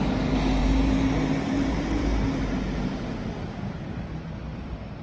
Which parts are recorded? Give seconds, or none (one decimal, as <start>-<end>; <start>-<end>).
0.0-0.6; 3.6-5.0

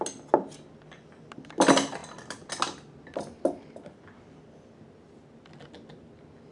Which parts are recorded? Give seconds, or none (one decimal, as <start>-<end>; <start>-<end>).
0.0-6.5

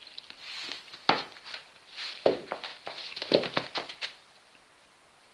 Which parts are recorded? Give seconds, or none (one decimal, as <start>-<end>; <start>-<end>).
0.0-2.7; 3.3-5.3

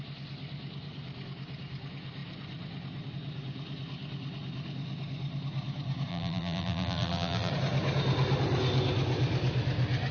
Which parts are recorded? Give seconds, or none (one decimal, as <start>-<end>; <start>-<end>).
0.0-6.1; 7.5-10.1

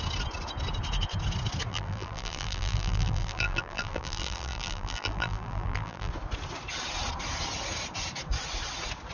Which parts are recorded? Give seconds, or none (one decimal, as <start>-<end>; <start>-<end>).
0.0-1.7; 6.1-9.1

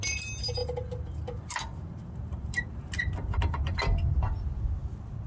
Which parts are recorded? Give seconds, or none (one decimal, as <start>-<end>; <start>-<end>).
0.0-0.6; 3.8-5.3

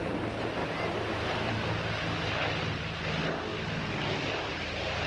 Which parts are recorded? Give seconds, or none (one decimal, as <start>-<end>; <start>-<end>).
0.0-0.6; 1.5-5.1